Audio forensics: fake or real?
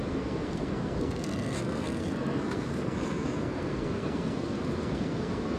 fake